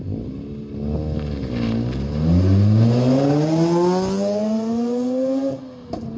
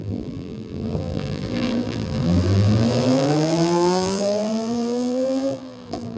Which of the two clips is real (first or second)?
first